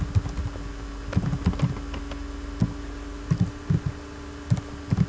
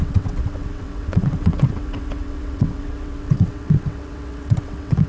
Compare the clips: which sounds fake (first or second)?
second